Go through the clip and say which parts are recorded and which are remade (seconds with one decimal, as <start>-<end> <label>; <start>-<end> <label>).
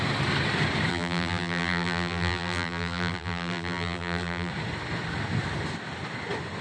0.0-0.9 recorded; 0.9-4.5 remade; 4.5-6.6 recorded